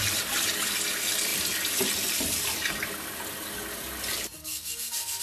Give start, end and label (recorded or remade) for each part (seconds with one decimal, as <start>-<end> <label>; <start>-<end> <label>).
0.0-4.4 recorded; 4.4-5.2 remade